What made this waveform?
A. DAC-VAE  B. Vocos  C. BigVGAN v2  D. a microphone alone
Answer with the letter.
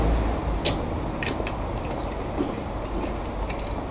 D